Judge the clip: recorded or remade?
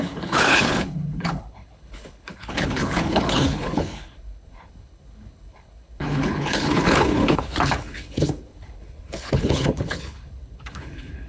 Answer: remade